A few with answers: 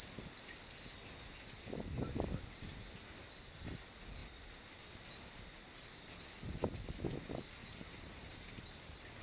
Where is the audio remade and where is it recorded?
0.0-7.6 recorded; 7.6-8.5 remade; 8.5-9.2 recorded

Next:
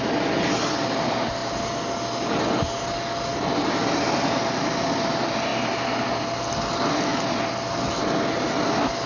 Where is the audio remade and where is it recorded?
0.0-9.1 recorded

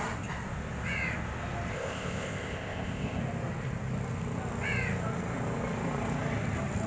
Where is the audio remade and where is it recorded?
0.0-1.7 recorded; 1.7-3.2 remade; 3.2-6.9 recorded